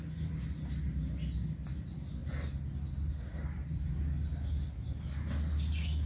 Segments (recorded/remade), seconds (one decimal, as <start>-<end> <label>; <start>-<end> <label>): 0.0-6.1 recorded